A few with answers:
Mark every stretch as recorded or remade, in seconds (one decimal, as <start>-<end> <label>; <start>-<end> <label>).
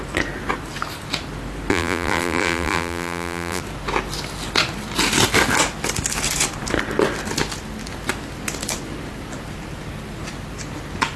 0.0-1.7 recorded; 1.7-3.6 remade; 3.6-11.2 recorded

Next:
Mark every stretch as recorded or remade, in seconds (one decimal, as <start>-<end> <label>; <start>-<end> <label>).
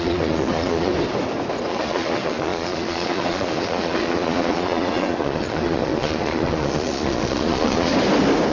0.0-0.9 remade; 0.9-1.7 recorded; 1.7-7.9 remade; 7.9-8.5 recorded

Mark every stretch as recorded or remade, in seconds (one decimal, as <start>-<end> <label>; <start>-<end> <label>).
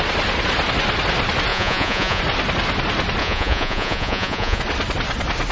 0.0-1.5 recorded; 1.5-2.2 remade; 2.2-3.2 recorded; 3.2-4.6 remade; 4.6-5.5 recorded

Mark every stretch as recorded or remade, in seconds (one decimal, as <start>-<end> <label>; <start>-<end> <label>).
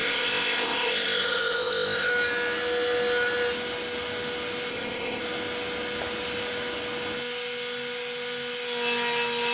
0.0-2.1 remade; 2.1-4.7 recorded; 4.7-5.2 remade; 5.2-9.5 recorded